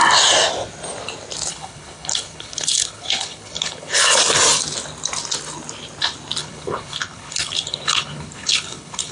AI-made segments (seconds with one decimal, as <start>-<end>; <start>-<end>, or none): 1.5-4.2; 6.4-9.1